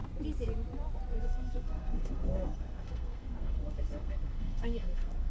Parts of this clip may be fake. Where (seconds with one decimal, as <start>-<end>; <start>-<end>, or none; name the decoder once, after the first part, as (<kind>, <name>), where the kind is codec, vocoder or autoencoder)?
1.2-5.3 (codec, SNAC)